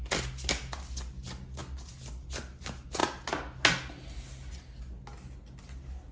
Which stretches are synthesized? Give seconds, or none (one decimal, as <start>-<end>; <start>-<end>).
none